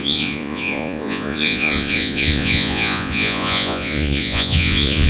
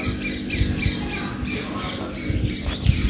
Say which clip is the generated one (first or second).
first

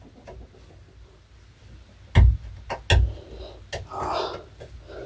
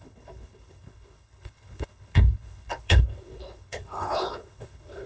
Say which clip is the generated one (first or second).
second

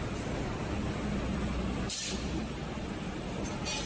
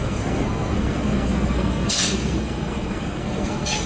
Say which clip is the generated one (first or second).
second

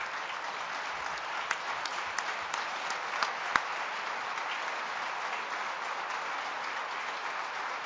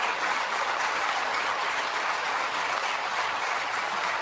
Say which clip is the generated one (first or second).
second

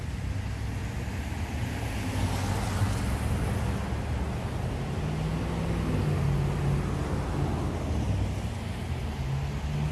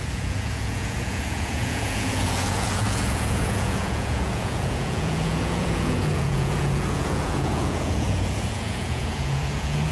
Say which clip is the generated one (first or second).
second